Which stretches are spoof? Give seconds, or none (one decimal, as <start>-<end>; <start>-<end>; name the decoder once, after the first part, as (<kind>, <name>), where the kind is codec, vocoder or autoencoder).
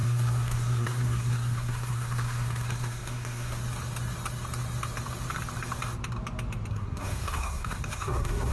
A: 0.0-3.6 (codec, SNAC); 6.7-8.5